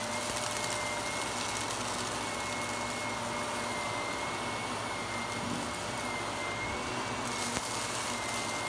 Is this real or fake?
real